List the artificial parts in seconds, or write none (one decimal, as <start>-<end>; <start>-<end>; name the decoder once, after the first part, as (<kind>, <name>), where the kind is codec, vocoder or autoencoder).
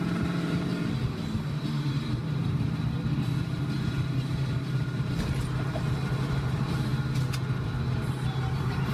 0.0-0.7 (vocoder, BigVGAN v2); 1.5-6.9; 7.9-8.9